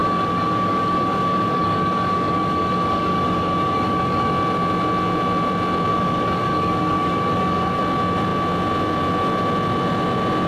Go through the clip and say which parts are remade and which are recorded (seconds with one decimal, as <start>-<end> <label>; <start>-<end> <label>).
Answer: 0.0-4.3 remade; 4.3-5.9 recorded; 5.9-7.8 remade; 7.8-10.5 recorded